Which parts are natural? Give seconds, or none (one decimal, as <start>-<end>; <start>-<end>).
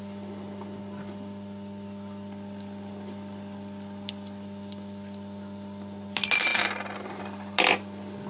0.0-8.3